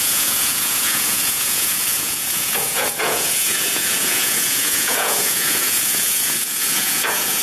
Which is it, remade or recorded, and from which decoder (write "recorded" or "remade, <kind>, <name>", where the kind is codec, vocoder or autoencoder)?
remade, vocoder, Vocos